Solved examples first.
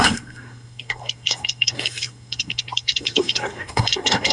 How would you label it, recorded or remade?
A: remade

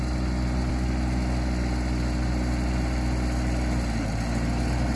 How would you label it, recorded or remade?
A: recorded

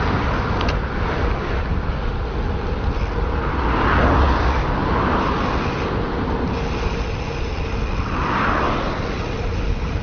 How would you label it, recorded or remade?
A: recorded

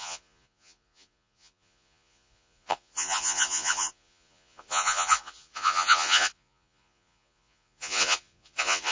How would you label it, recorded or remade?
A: remade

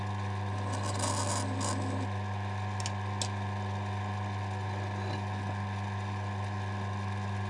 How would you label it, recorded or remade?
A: recorded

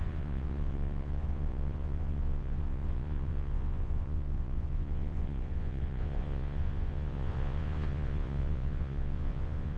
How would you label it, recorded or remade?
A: remade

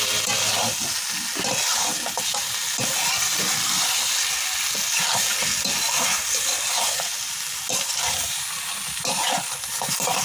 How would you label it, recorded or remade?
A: recorded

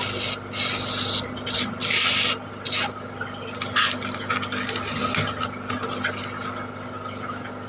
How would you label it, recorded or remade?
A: recorded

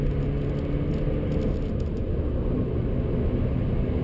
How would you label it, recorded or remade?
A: recorded